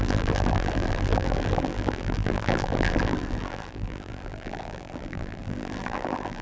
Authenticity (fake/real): fake